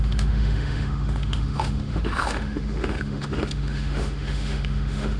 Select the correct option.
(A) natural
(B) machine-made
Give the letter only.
B